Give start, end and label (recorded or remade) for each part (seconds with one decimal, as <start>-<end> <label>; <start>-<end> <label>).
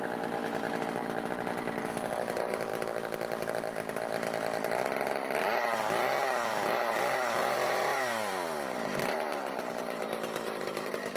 0.0-2.7 remade; 2.7-7.0 recorded; 7.0-11.2 remade